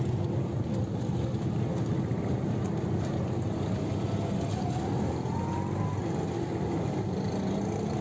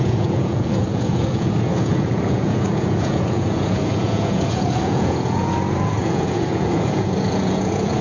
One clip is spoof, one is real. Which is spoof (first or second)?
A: second